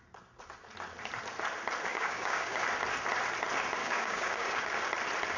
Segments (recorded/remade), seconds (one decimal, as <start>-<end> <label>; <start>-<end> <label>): 0.0-1.9 recorded; 1.9-2.6 remade; 2.6-3.8 recorded; 3.8-4.8 remade; 4.8-5.4 recorded